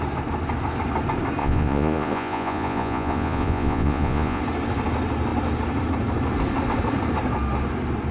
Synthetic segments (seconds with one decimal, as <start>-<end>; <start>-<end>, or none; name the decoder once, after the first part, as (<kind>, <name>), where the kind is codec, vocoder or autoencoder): 1.4-4.4 (vocoder, Vocos)